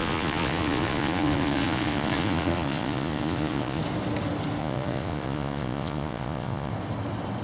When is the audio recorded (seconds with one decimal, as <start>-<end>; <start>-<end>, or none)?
3.8-4.6; 6.7-7.4